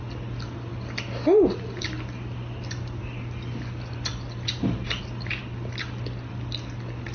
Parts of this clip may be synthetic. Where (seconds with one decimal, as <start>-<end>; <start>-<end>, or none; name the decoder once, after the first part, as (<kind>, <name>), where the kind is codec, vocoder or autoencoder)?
none